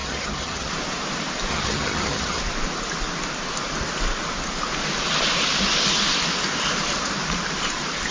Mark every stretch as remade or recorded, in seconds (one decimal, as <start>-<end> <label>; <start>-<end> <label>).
0.0-0.7 remade; 0.7-1.5 recorded; 1.5-2.4 remade; 2.4-8.1 recorded